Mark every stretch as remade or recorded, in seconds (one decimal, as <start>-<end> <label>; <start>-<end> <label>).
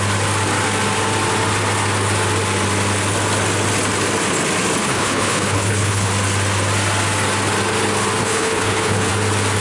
0.0-4.8 recorded; 4.8-6.1 remade; 6.1-8.2 recorded; 8.2-9.1 remade; 9.1-9.6 recorded